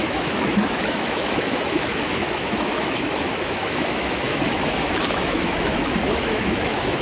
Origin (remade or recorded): remade